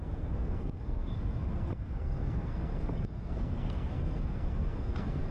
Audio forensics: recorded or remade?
remade